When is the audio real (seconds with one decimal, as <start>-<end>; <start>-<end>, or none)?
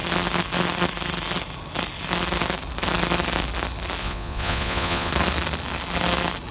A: 0.0-4.0; 5.1-6.5